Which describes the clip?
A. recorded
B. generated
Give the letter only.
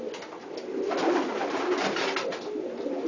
A